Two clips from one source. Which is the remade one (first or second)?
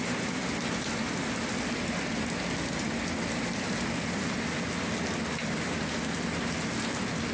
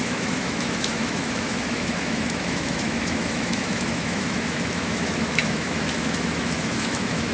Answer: second